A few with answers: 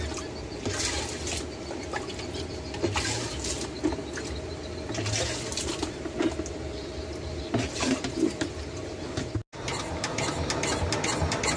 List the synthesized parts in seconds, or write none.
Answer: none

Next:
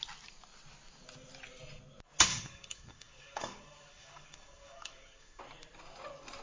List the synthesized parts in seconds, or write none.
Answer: 2.3-5.4 (codec, DAC)